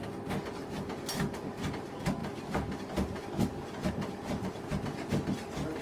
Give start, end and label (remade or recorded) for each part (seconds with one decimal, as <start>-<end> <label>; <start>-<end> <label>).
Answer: 0.0-2.2 recorded; 2.2-5.1 remade; 5.1-5.8 recorded